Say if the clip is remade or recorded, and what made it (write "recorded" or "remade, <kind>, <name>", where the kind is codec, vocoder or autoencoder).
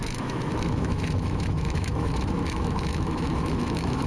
remade, autoencoder, DAC-VAE